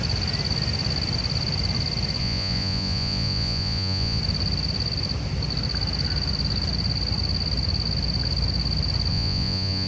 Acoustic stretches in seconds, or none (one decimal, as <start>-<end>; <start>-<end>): 0.0-2.2; 4.2-9.1